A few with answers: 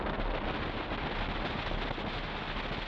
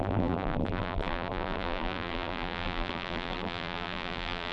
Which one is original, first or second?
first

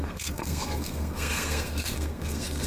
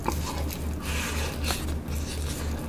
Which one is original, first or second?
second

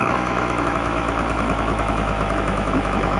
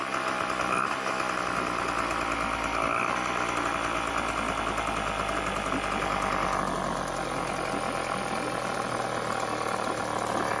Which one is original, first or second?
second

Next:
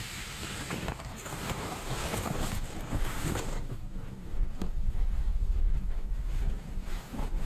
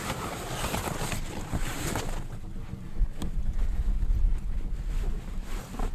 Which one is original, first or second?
second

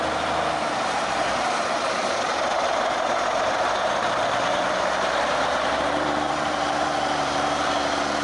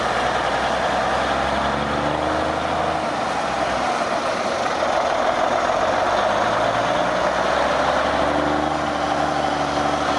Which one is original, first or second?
second